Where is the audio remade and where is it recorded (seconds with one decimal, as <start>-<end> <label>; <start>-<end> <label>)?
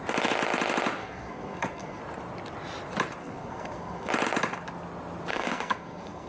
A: 0.0-1.0 recorded; 1.0-2.0 remade; 2.0-3.2 recorded; 3.2-4.1 remade; 4.1-5.3 recorded; 5.3-6.3 remade